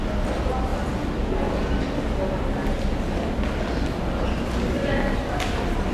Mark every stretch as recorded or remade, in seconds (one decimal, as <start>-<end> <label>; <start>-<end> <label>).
0.0-5.9 recorded